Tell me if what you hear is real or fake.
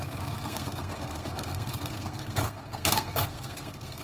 fake